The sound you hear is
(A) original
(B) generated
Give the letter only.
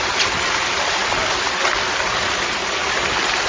A